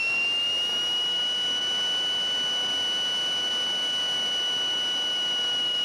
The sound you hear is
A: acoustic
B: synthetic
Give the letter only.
A